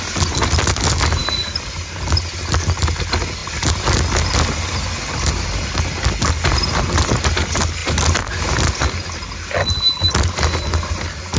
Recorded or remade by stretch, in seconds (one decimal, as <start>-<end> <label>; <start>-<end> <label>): 0.0-11.4 recorded